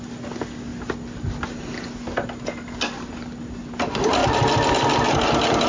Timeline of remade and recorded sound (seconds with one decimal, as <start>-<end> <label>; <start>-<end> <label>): 0.0-4.2 recorded; 4.2-4.7 remade; 4.7-5.7 recorded